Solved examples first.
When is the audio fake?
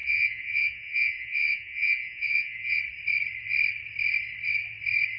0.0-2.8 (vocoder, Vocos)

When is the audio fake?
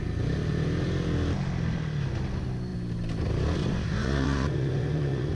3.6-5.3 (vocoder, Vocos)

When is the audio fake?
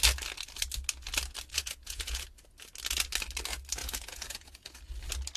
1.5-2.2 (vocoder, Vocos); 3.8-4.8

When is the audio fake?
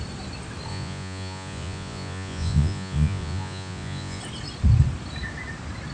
0.7-4.2 (vocoder, Vocos)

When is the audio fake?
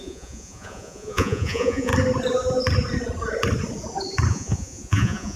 0.0-1.9 (vocoder, Vocos); 4.3-5.4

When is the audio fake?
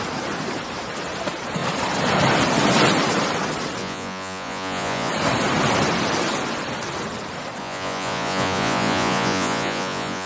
3.8-5.1 (vocoder, Vocos); 7.6-10.3